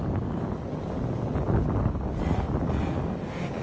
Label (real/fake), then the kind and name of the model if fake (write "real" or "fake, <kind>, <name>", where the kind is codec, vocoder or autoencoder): real